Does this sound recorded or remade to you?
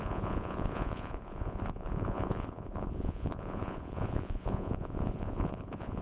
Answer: remade